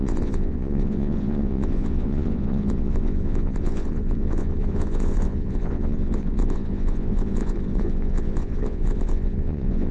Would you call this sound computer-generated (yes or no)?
yes